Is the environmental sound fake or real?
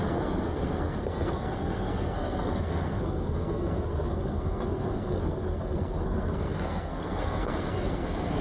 fake